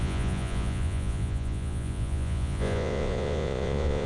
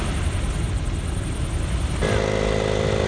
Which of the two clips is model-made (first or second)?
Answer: first